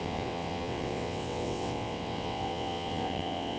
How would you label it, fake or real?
fake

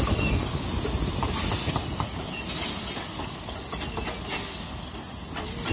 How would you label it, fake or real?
real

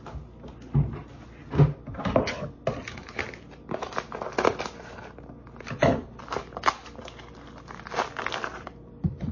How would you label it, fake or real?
real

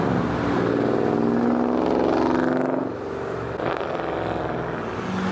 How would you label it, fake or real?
real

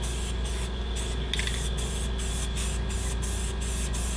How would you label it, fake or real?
real